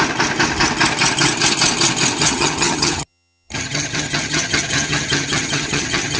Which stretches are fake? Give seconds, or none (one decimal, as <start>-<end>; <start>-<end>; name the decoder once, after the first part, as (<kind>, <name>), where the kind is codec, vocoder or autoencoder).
2.2-6.2 (vocoder, HiFi-GAN)